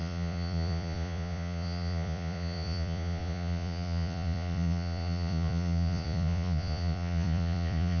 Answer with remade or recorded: remade